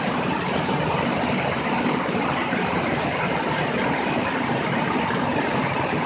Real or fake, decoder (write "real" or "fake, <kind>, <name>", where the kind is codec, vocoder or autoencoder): fake, vocoder, BigVGAN v2